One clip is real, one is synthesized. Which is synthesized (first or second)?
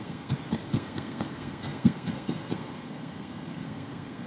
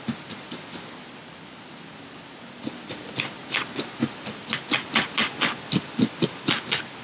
first